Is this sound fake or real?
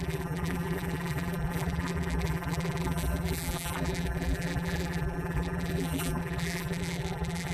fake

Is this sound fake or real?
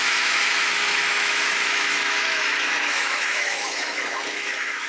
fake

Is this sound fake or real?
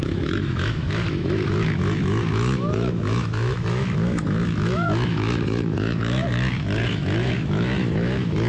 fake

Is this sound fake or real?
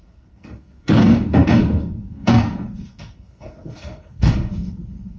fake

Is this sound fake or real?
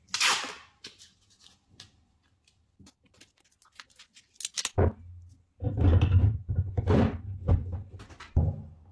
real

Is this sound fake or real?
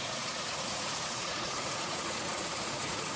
fake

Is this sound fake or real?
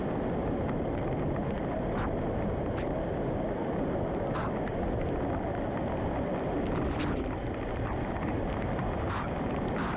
real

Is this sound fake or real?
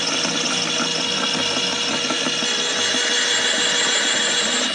real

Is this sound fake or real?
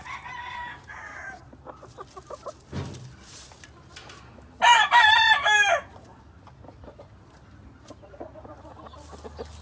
real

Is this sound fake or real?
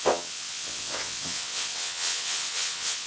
fake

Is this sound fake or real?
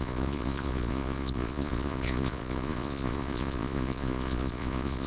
fake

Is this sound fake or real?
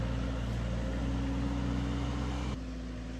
real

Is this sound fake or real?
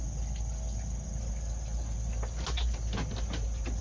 real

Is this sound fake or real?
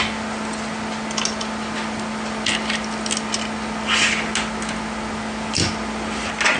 real